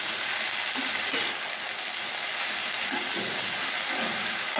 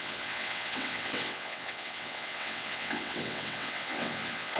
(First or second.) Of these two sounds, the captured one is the first